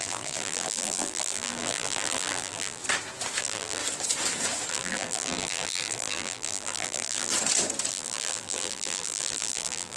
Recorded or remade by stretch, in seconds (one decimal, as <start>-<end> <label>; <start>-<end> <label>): 0.0-2.8 remade; 2.8-3.4 recorded; 3.4-3.8 remade; 3.8-4.7 recorded; 4.7-7.3 remade; 7.3-7.9 recorded; 7.9-10.0 remade